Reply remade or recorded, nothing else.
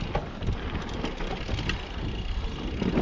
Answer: recorded